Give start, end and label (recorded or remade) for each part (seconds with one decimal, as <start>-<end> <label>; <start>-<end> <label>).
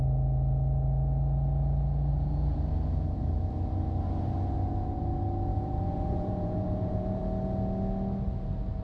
0.0-2.1 recorded; 2.1-3.4 remade; 3.4-5.5 recorded; 5.5-7.2 remade; 7.2-8.8 recorded